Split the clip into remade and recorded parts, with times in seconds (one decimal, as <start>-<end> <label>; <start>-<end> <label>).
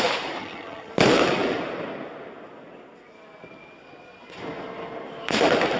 0.0-0.4 recorded; 0.4-0.9 remade; 0.9-5.8 recorded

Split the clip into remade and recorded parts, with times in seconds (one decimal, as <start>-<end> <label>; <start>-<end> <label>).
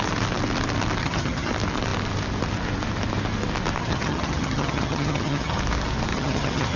0.0-1.0 recorded; 1.0-1.5 remade; 1.5-3.8 recorded; 3.8-5.6 remade; 5.6-6.1 recorded; 6.1-6.8 remade